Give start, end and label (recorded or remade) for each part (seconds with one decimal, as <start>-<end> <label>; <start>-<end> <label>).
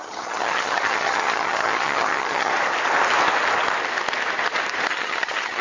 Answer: 0.0-2.5 remade; 2.5-4.9 recorded; 4.9-5.6 remade